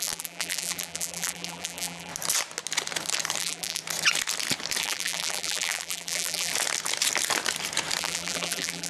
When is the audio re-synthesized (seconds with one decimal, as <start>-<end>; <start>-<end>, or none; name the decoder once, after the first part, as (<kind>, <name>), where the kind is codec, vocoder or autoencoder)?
0.0-2.1 (vocoder, BigVGAN v2); 3.4-3.8; 4.8-6.5; 8.0-8.9